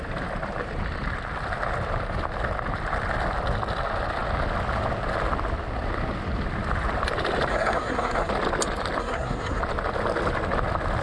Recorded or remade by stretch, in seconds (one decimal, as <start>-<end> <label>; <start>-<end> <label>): 0.0-7.5 recorded; 7.5-8.3 remade; 8.3-9.0 recorded; 9.0-9.6 remade; 9.6-11.0 recorded